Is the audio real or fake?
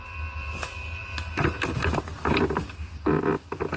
real